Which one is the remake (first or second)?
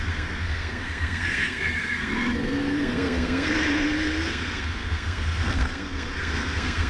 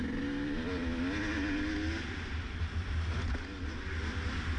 first